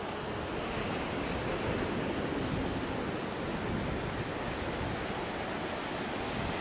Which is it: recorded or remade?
recorded